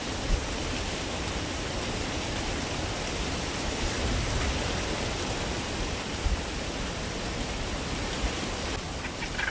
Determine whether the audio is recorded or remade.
recorded